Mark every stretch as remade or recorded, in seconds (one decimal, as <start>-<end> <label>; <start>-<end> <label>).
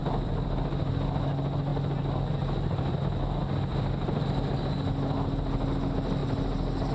0.0-0.7 remade; 0.7-3.7 recorded; 3.7-4.5 remade; 4.5-6.9 recorded